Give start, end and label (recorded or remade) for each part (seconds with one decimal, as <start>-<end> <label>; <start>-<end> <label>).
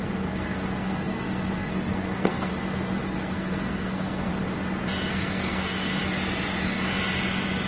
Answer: 0.0-2.5 remade; 2.5-3.0 recorded; 3.0-4.3 remade; 4.3-5.1 recorded; 5.1-5.9 remade; 5.9-7.7 recorded